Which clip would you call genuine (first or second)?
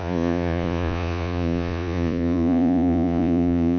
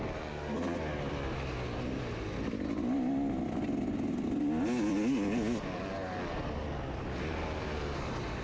second